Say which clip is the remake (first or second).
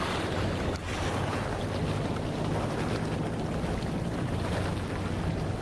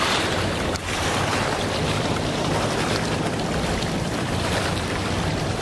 second